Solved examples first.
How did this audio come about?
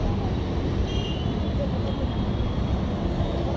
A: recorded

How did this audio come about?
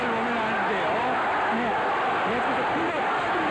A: recorded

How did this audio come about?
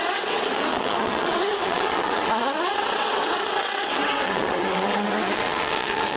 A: remade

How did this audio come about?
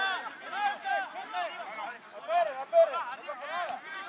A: recorded